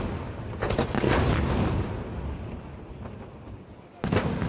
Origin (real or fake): real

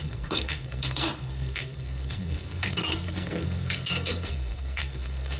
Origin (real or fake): fake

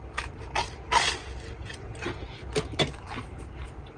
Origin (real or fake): real